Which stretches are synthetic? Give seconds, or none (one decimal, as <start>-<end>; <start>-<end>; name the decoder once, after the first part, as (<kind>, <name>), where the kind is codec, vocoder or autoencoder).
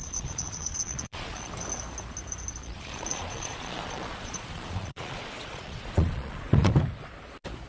0.0-1.5 (vocoder, Vocos); 2.6-6.7